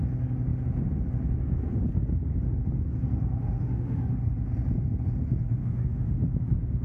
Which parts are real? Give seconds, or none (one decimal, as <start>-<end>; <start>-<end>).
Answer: 0.0-3.4; 4.1-5.6; 6.2-6.8